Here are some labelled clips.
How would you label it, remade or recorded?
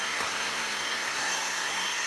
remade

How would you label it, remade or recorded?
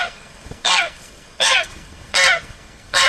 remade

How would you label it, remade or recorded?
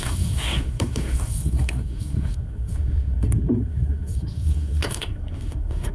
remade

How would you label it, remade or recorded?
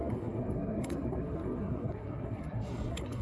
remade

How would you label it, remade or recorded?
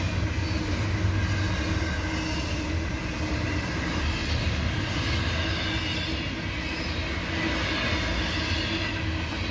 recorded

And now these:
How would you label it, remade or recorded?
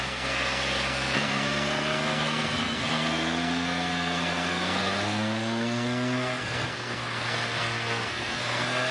remade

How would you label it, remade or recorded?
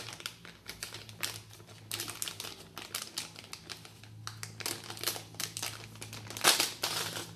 recorded